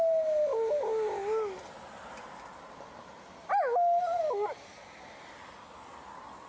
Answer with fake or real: real